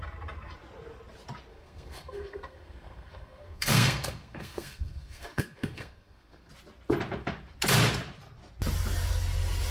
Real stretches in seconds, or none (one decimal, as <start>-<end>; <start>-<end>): 0.0-1.5; 6.5-9.7